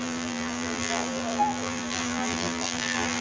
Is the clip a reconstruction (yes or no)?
yes